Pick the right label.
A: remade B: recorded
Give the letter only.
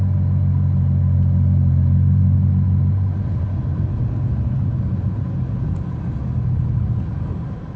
B